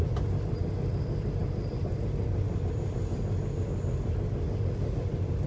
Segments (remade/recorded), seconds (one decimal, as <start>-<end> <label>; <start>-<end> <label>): 0.0-5.5 recorded